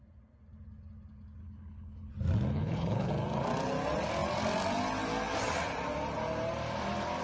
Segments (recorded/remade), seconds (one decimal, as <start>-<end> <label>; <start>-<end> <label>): 0.0-1.4 recorded; 1.4-2.1 remade; 2.1-2.5 recorded; 2.5-3.1 remade; 3.1-7.2 recorded